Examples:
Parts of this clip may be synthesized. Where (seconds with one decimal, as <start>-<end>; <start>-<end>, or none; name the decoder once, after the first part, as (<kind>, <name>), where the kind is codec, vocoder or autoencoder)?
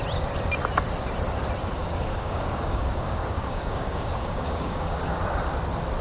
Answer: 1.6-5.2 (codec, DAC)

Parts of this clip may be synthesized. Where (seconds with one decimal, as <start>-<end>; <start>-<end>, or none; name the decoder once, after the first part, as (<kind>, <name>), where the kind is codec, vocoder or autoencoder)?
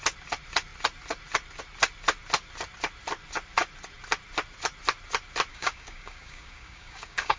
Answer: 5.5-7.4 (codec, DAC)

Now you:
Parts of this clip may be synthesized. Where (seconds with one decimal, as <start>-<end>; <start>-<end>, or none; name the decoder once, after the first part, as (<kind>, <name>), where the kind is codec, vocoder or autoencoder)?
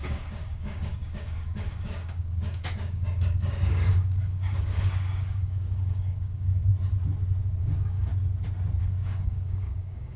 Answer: 0.0-6.7 (codec, DAC); 7.6-8.1; 8.8-10.2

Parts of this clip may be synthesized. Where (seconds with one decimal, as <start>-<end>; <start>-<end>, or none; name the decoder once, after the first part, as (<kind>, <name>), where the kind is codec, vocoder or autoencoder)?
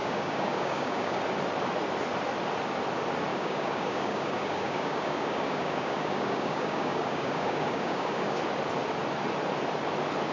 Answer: 0.0-1.2 (codec, DAC); 3.3-8.4